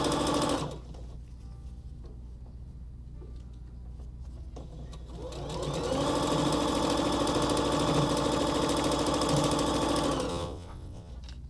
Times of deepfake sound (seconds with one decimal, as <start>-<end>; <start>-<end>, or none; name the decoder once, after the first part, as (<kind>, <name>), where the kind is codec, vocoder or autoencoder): 10.3-11.1 (vocoder, WaveNeXt)